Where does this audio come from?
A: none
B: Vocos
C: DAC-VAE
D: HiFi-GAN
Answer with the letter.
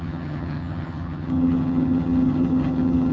D